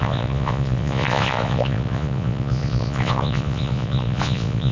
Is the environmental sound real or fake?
fake